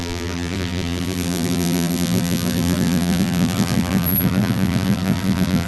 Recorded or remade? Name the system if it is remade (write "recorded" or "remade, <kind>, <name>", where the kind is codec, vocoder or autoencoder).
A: remade, vocoder, BigVGAN v2